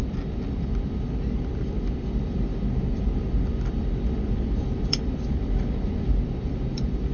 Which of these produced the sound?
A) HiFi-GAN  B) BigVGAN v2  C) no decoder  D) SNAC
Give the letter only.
B